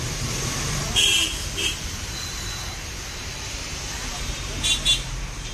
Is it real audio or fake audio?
fake